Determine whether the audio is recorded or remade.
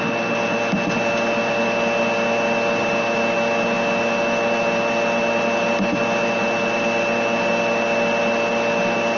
recorded